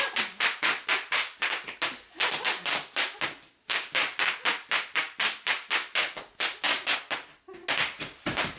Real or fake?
real